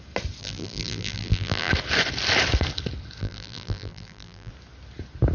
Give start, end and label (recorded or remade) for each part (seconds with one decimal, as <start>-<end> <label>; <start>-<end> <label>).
0.0-0.4 recorded; 0.4-1.7 remade; 1.7-3.2 recorded; 3.2-4.5 remade; 4.5-5.3 recorded

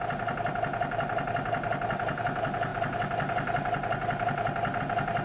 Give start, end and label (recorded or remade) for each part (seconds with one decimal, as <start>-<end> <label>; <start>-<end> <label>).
0.0-5.2 recorded

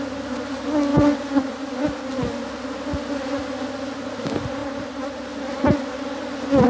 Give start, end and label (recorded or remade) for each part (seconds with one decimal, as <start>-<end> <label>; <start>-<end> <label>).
0.0-0.9 recorded; 0.9-1.5 remade; 1.5-6.7 recorded

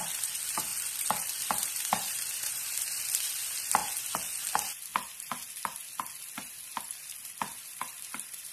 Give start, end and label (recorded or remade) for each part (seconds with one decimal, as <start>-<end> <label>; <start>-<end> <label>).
0.0-0.7 remade; 0.7-1.5 recorded; 1.5-3.8 remade; 3.8-4.4 recorded; 4.4-4.9 remade; 4.9-6.8 recorded; 6.8-8.5 remade

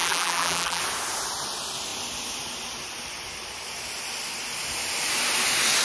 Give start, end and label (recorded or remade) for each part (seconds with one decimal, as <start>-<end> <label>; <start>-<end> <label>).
0.0-0.8 remade; 0.8-5.8 recorded

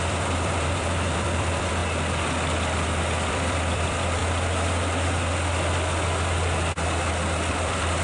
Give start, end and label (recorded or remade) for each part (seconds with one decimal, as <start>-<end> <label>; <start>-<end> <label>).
0.0-1.8 remade; 1.8-3.3 recorded; 3.3-4.2 remade; 4.2-7.5 recorded; 7.5-8.0 remade

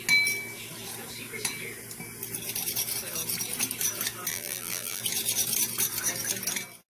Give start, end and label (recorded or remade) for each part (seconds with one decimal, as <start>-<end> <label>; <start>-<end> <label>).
0.0-4.3 recorded; 4.3-5.0 remade; 5.0-6.9 recorded